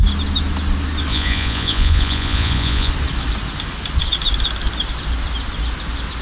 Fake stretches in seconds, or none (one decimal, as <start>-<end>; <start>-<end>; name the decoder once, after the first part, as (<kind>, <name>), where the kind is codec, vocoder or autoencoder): 1.1-2.9 (vocoder, Vocos)